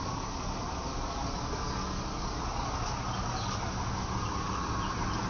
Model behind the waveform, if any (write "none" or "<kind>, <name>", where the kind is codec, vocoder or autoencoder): none